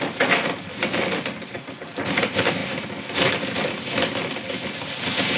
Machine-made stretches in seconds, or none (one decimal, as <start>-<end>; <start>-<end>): none